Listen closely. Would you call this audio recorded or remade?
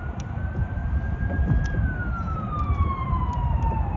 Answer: recorded